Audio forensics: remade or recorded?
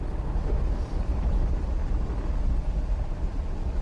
recorded